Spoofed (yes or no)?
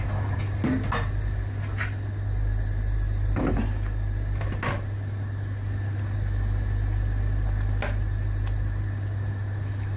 no